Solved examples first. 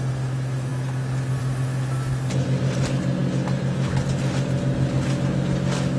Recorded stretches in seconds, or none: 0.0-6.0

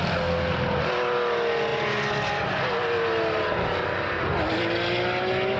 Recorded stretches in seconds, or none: 0.0-5.6